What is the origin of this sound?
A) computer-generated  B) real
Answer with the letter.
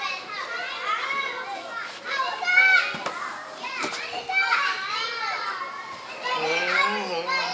B